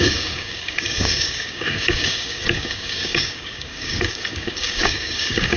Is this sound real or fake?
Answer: fake